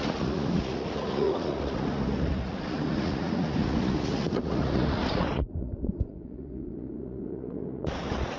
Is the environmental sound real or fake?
fake